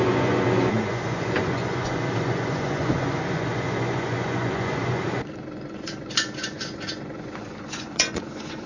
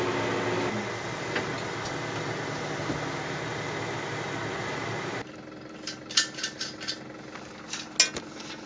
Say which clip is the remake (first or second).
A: first